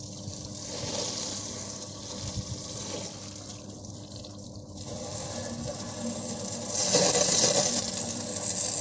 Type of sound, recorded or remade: recorded